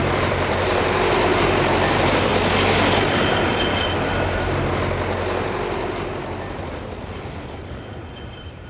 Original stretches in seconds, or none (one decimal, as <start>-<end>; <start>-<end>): 1.3-1.9; 2.3-6.9